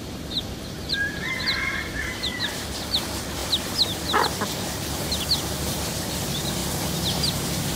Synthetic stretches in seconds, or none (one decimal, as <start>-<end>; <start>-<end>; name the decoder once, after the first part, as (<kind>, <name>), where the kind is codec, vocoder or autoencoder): 0.0-3.4 (vocoder, BigVGAN v2); 5.6-6.6